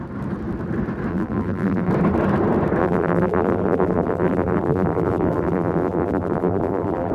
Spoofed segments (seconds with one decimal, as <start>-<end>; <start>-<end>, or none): 1.1-1.9; 2.8-7.1